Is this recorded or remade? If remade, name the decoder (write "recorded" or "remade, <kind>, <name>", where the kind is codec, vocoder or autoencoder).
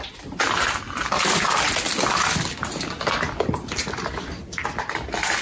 recorded